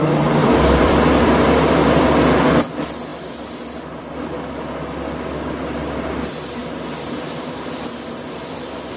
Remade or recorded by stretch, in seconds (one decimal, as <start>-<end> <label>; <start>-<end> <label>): 0.0-0.4 recorded; 0.4-1.5 remade; 1.5-9.0 recorded